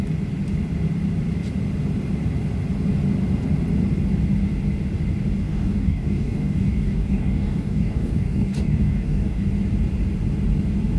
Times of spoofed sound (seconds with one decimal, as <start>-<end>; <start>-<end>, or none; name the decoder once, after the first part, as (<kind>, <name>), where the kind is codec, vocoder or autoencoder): 5.4-9.5 (codec, DAC)